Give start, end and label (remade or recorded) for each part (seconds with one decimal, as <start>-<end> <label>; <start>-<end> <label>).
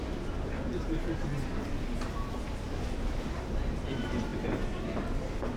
0.0-5.6 recorded